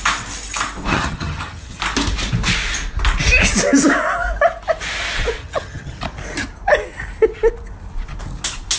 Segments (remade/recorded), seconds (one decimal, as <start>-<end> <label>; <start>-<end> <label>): 0.0-0.9 recorded; 0.9-1.8 remade; 1.8-5.4 recorded; 5.4-6.0 remade; 6.0-8.8 recorded